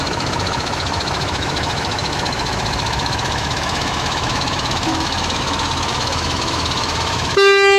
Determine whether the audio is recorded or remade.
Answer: remade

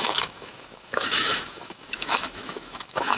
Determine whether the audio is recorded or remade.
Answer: remade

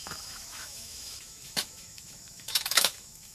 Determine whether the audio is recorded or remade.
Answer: remade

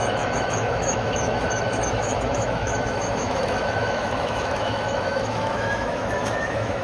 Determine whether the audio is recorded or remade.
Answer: remade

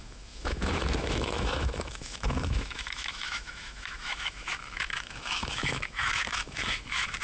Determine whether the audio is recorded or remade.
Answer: remade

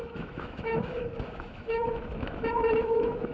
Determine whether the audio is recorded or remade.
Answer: remade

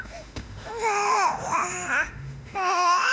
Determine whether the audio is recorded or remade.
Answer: remade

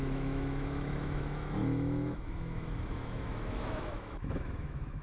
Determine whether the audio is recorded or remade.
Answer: remade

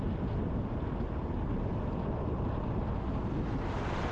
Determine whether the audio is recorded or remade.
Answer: recorded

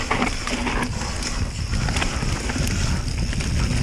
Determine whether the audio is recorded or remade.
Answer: recorded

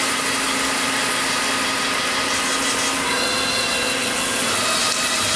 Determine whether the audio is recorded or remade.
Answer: recorded